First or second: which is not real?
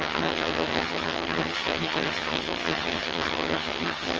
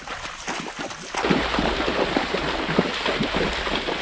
first